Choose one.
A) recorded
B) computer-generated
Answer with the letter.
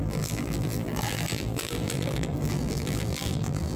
B